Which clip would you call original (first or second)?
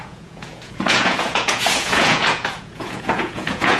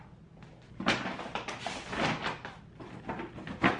second